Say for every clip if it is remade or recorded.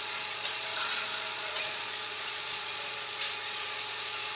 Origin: remade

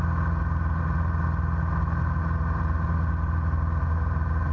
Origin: recorded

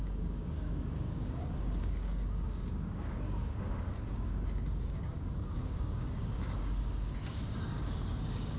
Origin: remade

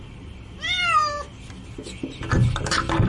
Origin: recorded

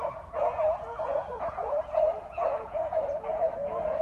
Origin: remade